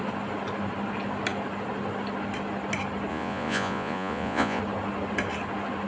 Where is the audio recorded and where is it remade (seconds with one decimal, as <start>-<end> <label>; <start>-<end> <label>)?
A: 0.0-3.1 recorded; 3.1-4.6 remade; 4.6-5.9 recorded